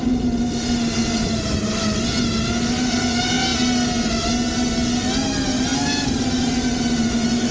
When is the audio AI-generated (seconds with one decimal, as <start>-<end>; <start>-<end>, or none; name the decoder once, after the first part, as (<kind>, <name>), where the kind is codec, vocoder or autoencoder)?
3.5-4.3 (vocoder, BigVGAN v2)